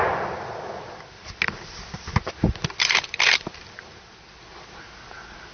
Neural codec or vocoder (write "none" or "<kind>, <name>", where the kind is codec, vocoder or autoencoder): none